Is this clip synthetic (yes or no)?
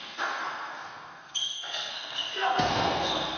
yes